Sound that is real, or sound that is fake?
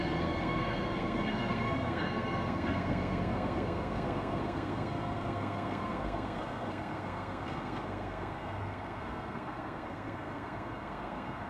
fake